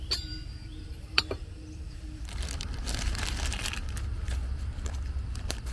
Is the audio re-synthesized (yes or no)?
yes